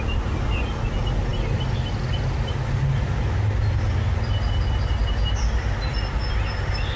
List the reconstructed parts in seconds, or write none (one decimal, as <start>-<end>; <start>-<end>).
none